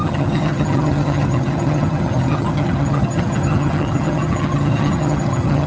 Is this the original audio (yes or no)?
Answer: no